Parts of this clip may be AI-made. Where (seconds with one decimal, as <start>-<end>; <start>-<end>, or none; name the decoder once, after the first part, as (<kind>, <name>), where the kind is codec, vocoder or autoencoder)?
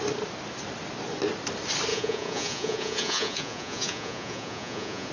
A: 1.9-5.1 (vocoder, Vocos)